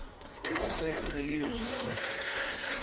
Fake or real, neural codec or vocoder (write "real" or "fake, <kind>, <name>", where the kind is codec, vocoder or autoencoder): fake, codec, SNAC